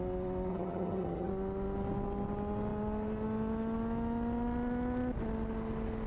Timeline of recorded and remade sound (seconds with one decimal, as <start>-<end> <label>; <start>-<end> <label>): 0.0-0.5 recorded; 0.5-1.3 remade; 1.3-6.1 recorded